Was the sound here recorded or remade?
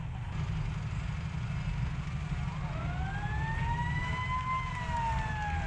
recorded